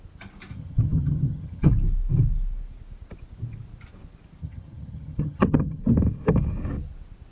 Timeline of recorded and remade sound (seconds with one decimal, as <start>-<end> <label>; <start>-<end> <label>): 0.0-0.5 recorded; 0.5-1.7 remade; 1.7-4.4 recorded; 4.4-5.8 remade; 5.8-7.3 recorded